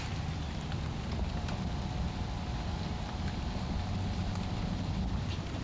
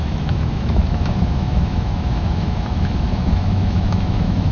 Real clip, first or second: first